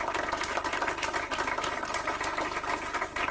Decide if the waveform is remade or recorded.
recorded